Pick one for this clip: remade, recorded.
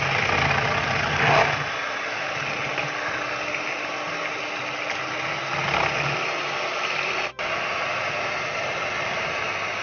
recorded